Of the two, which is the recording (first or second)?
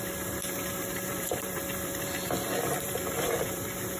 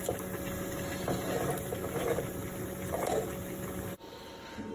second